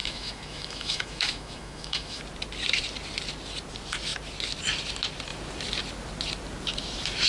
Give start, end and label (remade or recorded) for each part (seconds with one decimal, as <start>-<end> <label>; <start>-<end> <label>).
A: 0.0-2.2 remade; 2.2-7.3 recorded

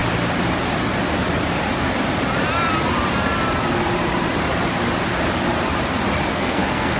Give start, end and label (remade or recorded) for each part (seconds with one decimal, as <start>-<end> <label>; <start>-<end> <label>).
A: 0.0-6.3 recorded; 6.3-7.0 remade